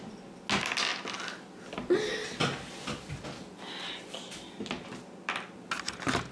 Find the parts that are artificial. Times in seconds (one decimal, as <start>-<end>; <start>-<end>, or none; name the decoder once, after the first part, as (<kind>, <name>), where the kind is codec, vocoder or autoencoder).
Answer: none